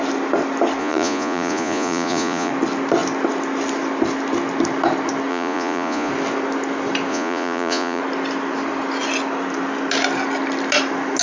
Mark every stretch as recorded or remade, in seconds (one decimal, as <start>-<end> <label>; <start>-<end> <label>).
0.0-0.8 recorded; 0.8-2.5 remade; 2.5-5.3 recorded; 5.3-6.1 remade; 6.1-7.1 recorded; 7.1-8.0 remade; 8.0-11.2 recorded

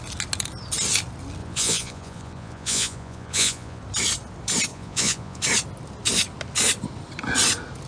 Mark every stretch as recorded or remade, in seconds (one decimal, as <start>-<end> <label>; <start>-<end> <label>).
0.0-1.4 recorded; 1.4-3.8 remade; 3.8-4.7 recorded; 4.7-5.4 remade; 5.4-7.9 recorded

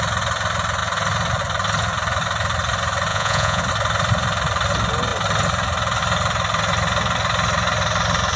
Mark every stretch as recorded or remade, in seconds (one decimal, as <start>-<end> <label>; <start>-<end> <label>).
0.0-3.1 recorded; 3.1-3.6 remade; 3.6-8.4 recorded

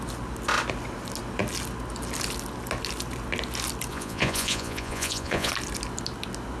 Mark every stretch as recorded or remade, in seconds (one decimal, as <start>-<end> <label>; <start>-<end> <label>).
0.0-3.9 recorded; 3.9-5.5 remade; 5.5-6.6 recorded

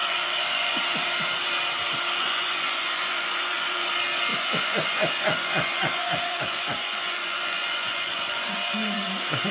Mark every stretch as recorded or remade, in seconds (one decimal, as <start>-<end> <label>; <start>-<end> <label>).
0.0-0.8 remade; 0.8-2.2 recorded; 2.2-3.9 remade; 3.9-4.3 recorded; 4.3-9.1 remade; 9.1-9.5 recorded

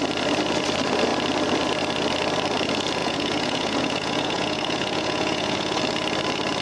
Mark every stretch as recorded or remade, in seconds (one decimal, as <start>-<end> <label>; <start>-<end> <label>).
0.0-3.0 recorded; 3.0-5.8 remade; 5.8-6.6 recorded

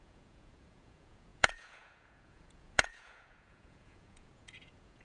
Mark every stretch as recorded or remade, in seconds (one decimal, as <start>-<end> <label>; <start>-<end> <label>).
0.0-5.0 remade

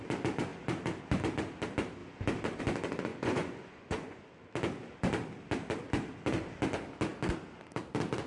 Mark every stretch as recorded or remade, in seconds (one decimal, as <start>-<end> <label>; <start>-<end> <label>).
0.0-3.1 recorded; 3.1-4.2 remade; 4.2-8.3 recorded